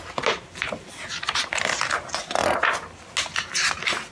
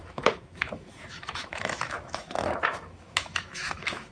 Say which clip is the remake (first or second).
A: second